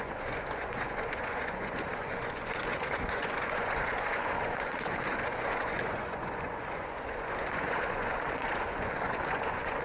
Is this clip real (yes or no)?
no